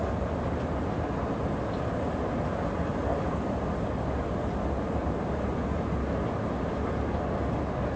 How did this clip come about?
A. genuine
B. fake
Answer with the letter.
A